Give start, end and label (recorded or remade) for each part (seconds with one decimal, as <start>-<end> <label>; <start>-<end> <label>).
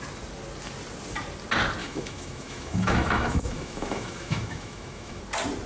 0.0-1.8 recorded; 1.8-5.2 remade; 5.2-5.7 recorded